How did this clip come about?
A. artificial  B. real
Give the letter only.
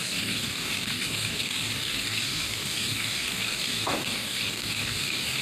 A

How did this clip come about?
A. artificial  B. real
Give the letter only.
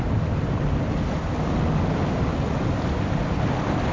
B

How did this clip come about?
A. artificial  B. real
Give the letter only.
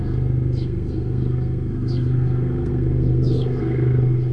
A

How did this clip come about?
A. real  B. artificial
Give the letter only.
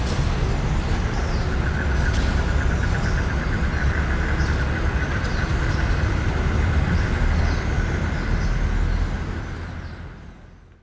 A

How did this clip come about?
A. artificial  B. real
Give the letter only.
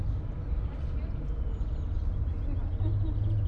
B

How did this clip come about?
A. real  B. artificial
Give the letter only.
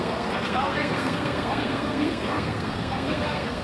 B